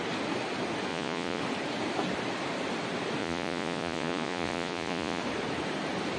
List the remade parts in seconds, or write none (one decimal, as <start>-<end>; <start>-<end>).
0.9-1.4; 3.2-5.2